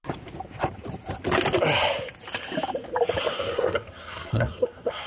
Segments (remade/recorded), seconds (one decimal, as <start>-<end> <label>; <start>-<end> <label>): 0.0-3.3 recorded; 3.3-5.1 remade